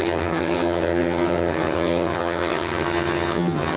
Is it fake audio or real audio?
fake